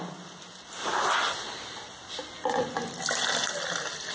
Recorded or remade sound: recorded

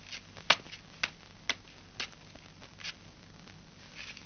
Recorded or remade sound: recorded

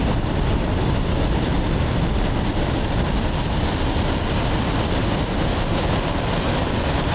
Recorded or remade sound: recorded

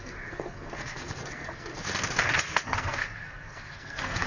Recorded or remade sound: remade